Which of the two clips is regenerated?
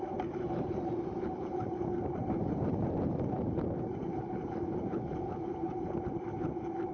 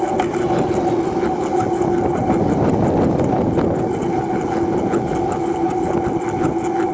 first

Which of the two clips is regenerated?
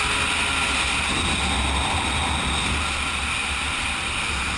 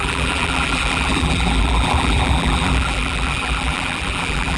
second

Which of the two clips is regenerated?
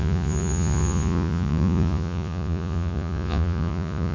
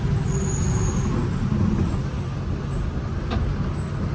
first